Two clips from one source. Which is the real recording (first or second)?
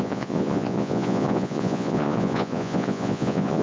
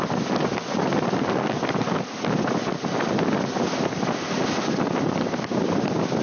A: second